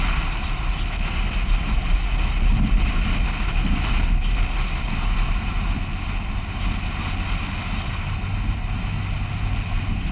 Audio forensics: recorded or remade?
recorded